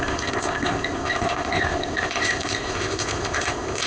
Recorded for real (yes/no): no